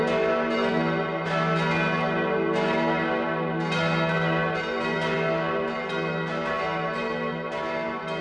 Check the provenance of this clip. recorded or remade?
recorded